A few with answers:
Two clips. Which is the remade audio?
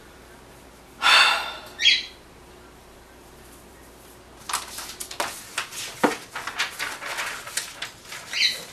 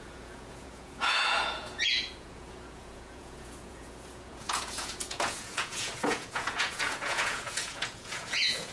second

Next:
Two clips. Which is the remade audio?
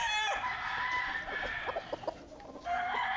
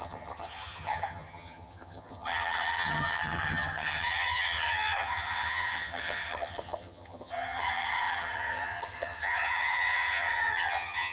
second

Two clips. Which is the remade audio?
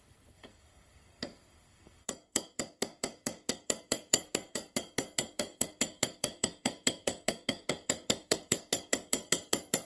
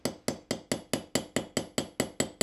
first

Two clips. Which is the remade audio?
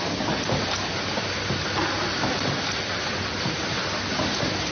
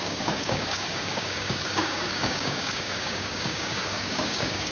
second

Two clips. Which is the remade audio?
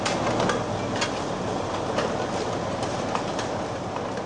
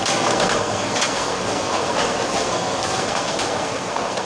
second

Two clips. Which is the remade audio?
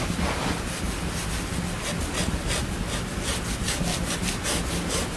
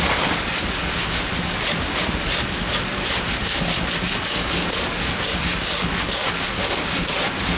second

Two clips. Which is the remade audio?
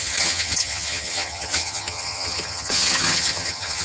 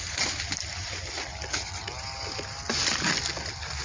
first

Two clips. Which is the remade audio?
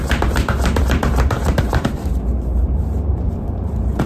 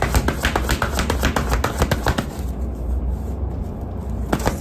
first